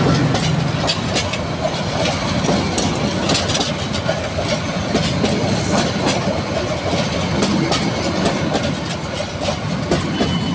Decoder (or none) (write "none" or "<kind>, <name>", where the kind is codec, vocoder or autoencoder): none